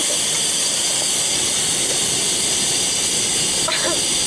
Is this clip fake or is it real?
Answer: real